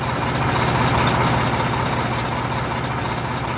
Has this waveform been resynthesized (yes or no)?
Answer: no